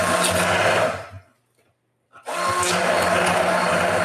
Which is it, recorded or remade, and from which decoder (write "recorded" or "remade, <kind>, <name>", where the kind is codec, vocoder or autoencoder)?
recorded